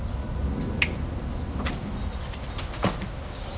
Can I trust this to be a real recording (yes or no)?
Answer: yes